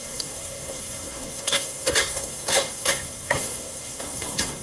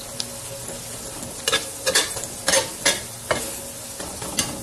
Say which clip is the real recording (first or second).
second